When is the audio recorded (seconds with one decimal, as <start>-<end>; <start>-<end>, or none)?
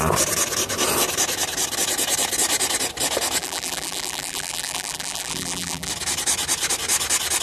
0.0-3.4; 5.9-7.4